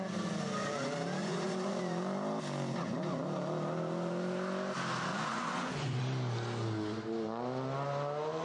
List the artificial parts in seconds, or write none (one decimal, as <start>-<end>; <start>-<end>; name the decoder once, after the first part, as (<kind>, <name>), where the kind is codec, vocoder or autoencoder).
1.2-1.8 (vocoder, Vocos); 5.1-6.0